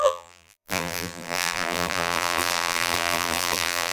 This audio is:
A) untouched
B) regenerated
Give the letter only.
B